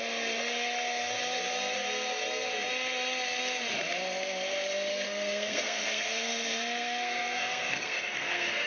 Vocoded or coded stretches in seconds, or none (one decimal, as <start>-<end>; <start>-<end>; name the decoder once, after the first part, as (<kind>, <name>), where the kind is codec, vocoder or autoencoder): 4.9-8.7 (codec, SNAC)